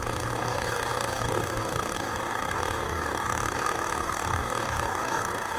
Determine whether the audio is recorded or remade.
remade